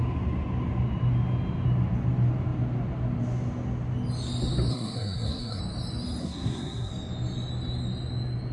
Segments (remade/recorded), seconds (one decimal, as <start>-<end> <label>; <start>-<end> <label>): 0.0-4.7 recorded; 4.7-5.6 remade; 5.6-6.2 recorded; 6.2-6.9 remade; 6.9-8.5 recorded